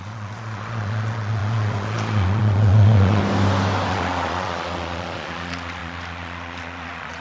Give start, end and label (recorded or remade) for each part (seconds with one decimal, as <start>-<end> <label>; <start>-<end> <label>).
0.0-3.2 remade; 3.2-3.9 recorded; 3.9-7.2 remade